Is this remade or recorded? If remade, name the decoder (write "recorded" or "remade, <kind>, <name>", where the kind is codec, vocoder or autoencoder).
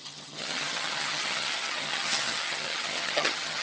remade, vocoder, HiFi-GAN